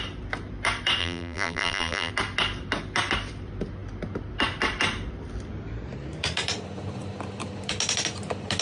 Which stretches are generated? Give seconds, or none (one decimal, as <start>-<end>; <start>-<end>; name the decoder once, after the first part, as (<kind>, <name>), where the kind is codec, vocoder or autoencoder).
1.0-2.1 (vocoder, BigVGAN v2)